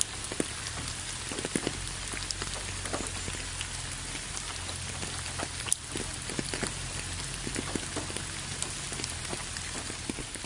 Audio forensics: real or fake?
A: real